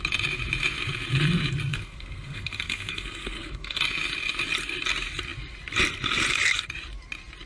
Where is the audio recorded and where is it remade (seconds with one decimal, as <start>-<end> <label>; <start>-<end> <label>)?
0.0-1.7 recorded; 1.7-3.8 remade; 3.8-7.5 recorded